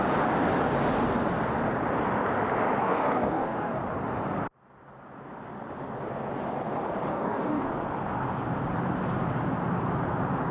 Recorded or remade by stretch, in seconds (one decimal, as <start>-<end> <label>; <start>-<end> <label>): 0.0-2.8 recorded; 2.8-3.8 remade; 3.8-7.1 recorded; 7.1-7.7 remade; 7.7-10.5 recorded